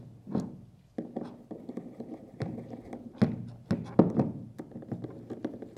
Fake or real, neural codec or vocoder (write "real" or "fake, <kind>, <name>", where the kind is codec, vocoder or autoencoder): real